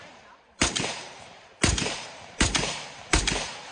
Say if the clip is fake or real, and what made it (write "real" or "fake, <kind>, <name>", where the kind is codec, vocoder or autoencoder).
fake, vocoder, BigVGAN v2